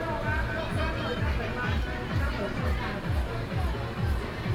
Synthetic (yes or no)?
no